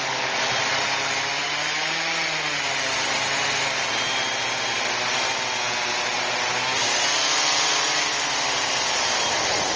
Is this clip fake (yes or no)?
no